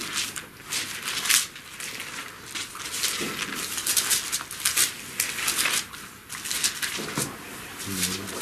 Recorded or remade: recorded